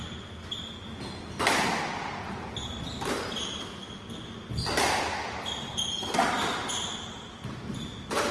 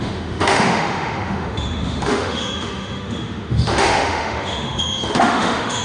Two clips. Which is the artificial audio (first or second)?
second